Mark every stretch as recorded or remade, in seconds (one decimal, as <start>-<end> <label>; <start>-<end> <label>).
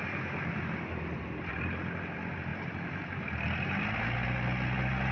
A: 0.0-5.1 recorded